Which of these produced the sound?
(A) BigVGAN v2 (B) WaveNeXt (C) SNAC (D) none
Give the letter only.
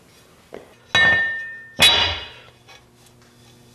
D